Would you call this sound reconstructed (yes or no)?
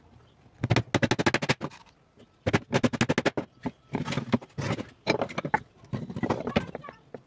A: no